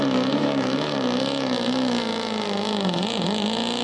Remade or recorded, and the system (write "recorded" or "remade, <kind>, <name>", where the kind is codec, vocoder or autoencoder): recorded